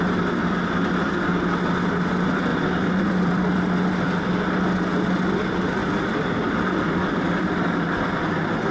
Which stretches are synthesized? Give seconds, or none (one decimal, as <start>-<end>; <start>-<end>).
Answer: 2.5-4.2; 5.8-7.3